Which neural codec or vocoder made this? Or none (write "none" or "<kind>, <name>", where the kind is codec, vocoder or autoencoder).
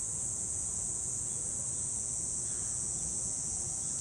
vocoder, Vocos